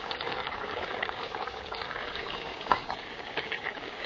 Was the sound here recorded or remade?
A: remade